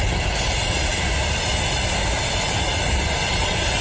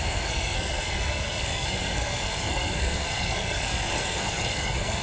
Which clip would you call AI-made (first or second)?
second